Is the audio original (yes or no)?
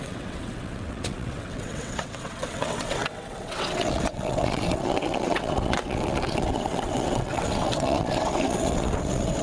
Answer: no